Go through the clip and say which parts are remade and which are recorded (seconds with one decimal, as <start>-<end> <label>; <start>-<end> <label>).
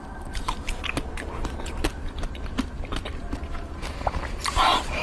0.0-0.5 remade; 0.5-1.9 recorded; 1.9-5.0 remade